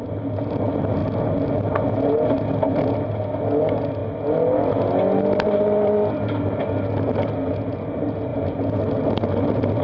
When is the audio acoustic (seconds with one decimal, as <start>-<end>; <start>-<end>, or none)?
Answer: 0.0-8.3; 8.8-9.8